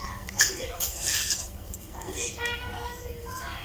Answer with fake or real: fake